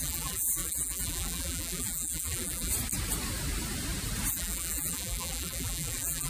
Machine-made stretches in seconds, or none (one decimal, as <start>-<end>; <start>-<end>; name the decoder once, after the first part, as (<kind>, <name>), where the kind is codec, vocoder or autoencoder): 0.0-2.7 (vocoder, BigVGAN v2); 4.3-6.3